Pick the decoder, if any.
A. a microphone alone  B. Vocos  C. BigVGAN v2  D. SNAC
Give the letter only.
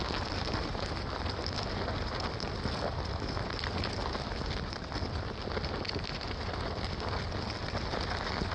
A